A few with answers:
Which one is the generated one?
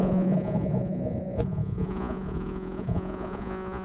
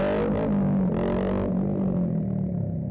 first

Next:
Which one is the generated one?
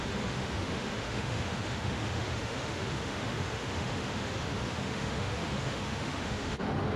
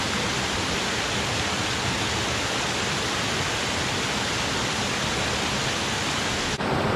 first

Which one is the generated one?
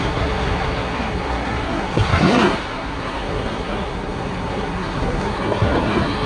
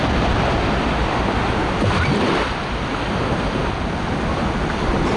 first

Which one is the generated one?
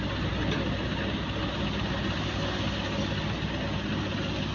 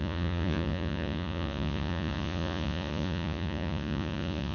second